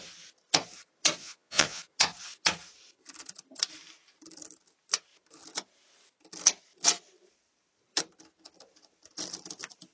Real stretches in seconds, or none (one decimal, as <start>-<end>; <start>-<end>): 0.0-1.2; 1.8-9.9